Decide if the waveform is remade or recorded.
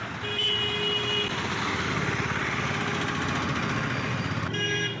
recorded